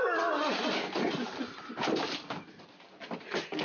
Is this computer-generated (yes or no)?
no